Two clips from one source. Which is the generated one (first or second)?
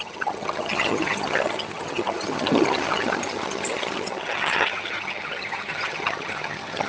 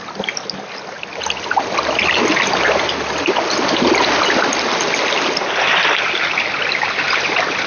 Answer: first